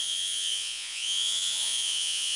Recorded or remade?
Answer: remade